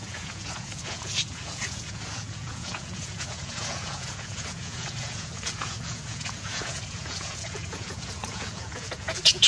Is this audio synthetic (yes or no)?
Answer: yes